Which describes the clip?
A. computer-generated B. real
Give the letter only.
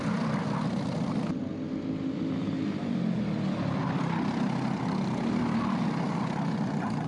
B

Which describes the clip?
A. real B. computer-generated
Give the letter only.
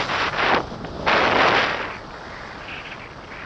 A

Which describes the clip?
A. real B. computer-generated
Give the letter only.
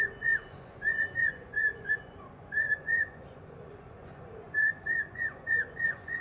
B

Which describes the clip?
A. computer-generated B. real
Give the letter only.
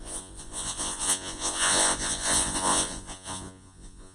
A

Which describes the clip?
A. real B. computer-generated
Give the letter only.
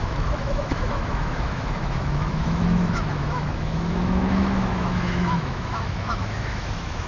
B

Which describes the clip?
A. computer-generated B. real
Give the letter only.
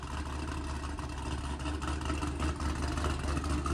B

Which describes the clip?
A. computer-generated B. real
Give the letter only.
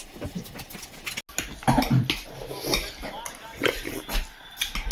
B